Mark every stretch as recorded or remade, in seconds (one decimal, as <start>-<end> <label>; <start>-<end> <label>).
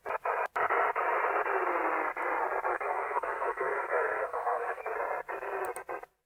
0.0-2.7 recorded; 2.7-4.8 remade; 4.8-6.3 recorded